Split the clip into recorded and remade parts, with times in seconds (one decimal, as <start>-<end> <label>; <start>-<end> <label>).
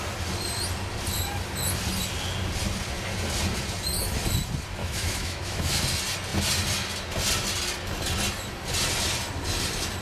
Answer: 0.0-4.8 recorded; 4.8-5.8 remade; 5.8-10.0 recorded